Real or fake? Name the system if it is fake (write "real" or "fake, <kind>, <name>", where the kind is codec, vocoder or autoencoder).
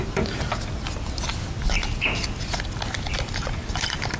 real